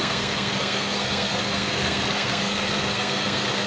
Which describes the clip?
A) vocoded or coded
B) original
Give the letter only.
A